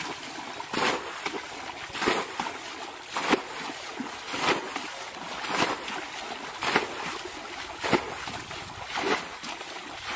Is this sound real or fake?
real